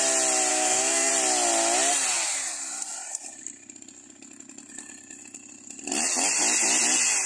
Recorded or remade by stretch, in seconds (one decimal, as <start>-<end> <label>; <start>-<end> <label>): 0.0-0.5 recorded; 0.5-1.1 remade; 1.1-7.3 recorded